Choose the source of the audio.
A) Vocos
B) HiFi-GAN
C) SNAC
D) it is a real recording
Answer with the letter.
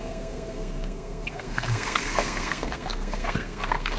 C